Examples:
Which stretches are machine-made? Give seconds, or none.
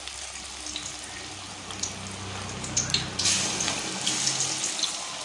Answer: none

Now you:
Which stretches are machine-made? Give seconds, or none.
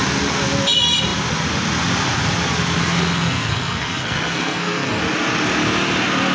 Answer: 2.8-5.0 (codec, SNAC)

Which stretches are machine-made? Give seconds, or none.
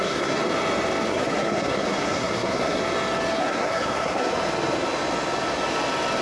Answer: 0.0-0.4 (codec, SNAC); 1.1-2.8; 3.4-4.3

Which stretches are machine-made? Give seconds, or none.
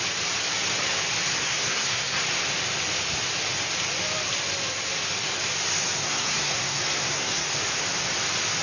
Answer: 1.4-2.2 (codec, SNAC); 6.0-7.5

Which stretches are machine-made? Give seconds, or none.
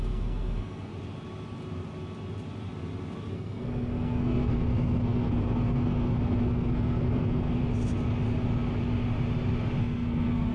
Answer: 0.0-0.9 (codec, SNAC); 3.3-7.6; 9.8-10.5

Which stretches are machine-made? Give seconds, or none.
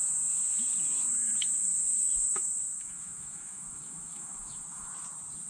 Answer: 1.6-4.9 (autoencoder, DAC-VAE)